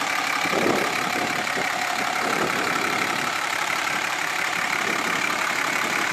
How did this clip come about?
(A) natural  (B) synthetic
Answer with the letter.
B